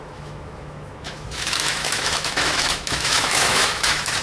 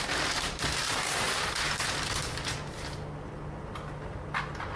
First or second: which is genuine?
second